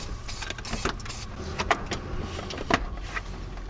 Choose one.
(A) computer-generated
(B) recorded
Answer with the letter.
B